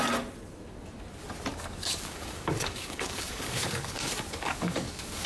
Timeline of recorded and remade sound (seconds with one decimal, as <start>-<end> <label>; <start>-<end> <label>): 0.0-1.5 recorded; 1.5-5.3 remade